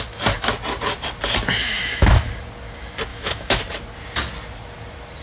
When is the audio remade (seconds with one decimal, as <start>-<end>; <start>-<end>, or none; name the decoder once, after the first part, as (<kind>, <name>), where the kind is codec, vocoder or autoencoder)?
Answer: 1.6-2.3 (autoencoder, DAC-VAE); 3.1-3.6